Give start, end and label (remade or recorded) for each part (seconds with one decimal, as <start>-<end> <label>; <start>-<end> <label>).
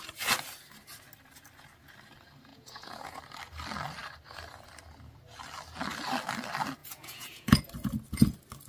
0.0-2.5 recorded; 2.5-3.2 remade; 3.2-6.8 recorded; 6.8-7.6 remade; 7.6-8.7 recorded